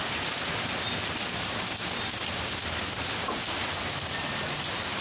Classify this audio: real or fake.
real